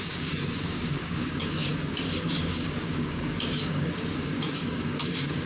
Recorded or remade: remade